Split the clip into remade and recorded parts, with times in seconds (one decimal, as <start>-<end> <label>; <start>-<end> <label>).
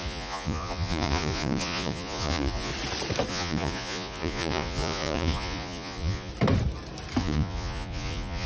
0.0-2.7 remade; 2.7-3.3 recorded; 3.3-6.3 remade; 6.3-7.2 recorded; 7.2-8.5 remade